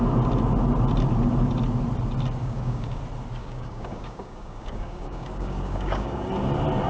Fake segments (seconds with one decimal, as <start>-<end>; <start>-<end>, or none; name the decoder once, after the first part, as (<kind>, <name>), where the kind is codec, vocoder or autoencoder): 2.4-3.0 (codec, DAC); 3.4-6.3